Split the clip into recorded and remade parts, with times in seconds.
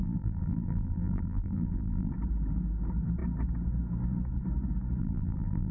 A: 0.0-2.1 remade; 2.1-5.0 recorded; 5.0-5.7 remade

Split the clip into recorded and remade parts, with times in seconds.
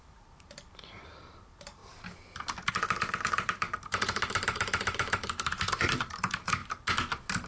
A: 0.0-1.8 remade; 1.8-2.7 recorded; 2.7-6.6 remade; 6.6-7.5 recorded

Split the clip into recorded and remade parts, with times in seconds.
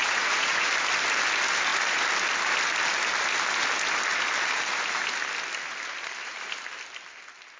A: 0.0-0.7 remade; 0.7-7.6 recorded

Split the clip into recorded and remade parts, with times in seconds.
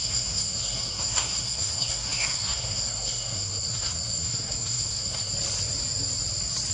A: 0.0-5.3 remade; 5.3-6.7 recorded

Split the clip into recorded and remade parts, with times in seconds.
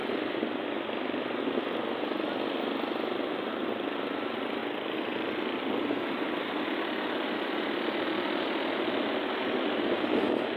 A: 0.0-10.6 recorded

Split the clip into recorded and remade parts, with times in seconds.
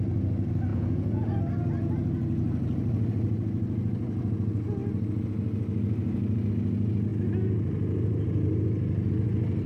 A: 0.0-0.7 recorded; 0.7-1.4 remade; 1.4-9.7 recorded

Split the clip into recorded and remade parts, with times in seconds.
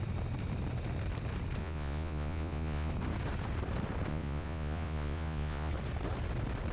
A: 0.0-1.6 recorded; 1.6-2.9 remade; 2.9-4.1 recorded; 4.1-5.7 remade; 5.7-6.7 recorded